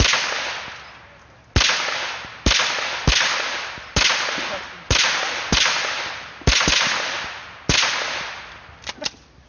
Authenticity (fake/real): real